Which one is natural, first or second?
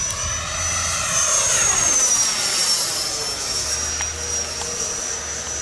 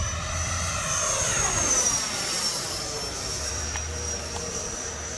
first